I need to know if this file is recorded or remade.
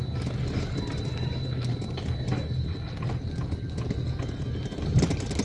recorded